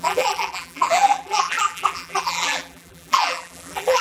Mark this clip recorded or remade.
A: remade